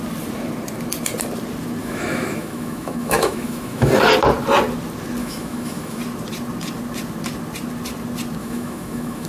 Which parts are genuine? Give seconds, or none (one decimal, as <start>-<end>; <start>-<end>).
0.0-1.8; 3.9-5.2; 6.0-8.4